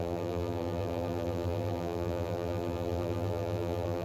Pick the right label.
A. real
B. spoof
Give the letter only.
B